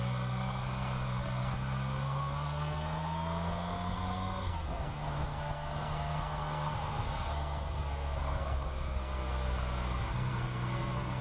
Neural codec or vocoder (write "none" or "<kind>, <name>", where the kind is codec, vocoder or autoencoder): codec, SNAC